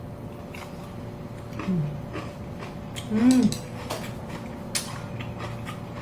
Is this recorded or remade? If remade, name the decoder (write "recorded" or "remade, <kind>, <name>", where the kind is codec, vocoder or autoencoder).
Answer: recorded